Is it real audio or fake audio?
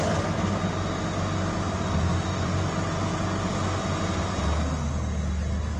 real